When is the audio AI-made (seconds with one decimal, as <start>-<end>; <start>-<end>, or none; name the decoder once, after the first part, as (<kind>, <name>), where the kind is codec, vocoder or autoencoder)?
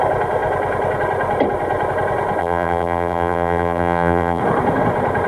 2.4-4.4 (vocoder, BigVGAN v2)